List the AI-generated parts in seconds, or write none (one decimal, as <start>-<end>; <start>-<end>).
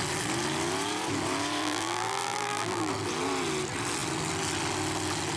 1.6-2.9